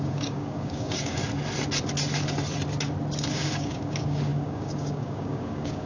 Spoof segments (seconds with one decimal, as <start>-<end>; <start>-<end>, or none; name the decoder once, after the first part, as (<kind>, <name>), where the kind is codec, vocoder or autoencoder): 0.0-1.2 (codec, DAC); 3.3-5.9